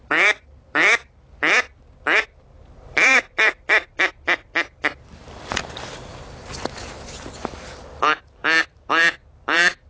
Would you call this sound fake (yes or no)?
yes